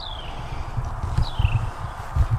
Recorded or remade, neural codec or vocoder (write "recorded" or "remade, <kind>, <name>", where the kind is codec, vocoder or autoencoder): recorded